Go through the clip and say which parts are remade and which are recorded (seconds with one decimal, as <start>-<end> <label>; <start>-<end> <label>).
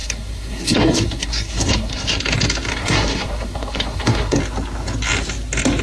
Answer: 0.0-2.2 remade; 2.2-2.7 recorded; 2.7-4.4 remade; 4.4-5.8 recorded